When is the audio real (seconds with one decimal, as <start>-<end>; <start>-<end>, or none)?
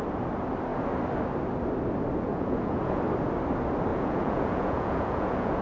0.0-2.3; 3.0-3.9